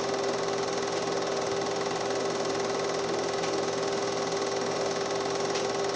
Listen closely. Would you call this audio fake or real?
real